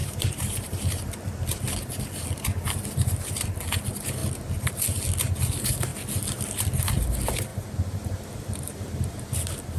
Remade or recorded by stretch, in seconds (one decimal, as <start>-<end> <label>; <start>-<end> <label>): 0.0-1.1 remade; 1.1-7.5 recorded; 7.5-9.8 remade